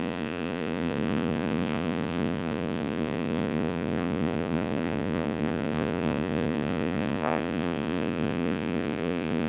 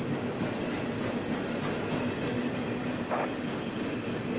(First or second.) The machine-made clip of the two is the first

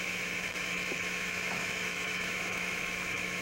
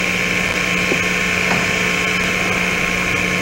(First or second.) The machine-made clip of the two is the first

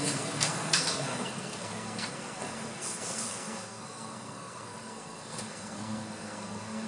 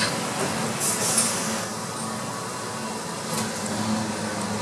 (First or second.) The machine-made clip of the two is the first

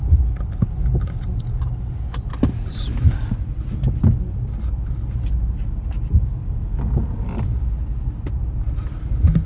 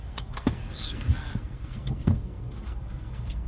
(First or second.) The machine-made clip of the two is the second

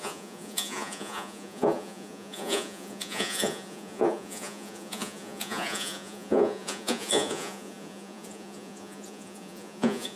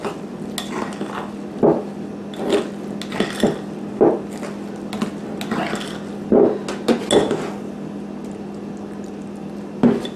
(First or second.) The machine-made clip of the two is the first